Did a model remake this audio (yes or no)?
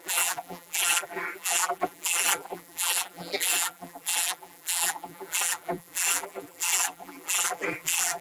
yes